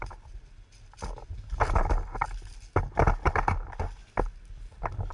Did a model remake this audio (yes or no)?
no